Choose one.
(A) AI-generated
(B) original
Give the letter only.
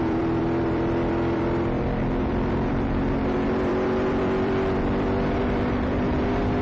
A